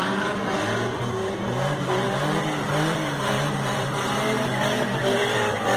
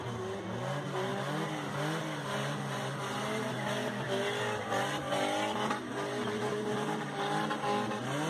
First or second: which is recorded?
second